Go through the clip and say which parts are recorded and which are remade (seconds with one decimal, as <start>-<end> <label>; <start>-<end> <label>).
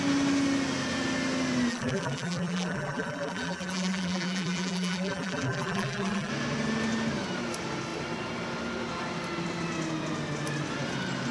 0.0-1.7 recorded; 1.7-6.3 remade; 6.3-11.3 recorded